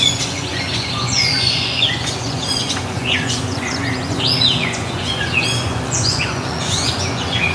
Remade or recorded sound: remade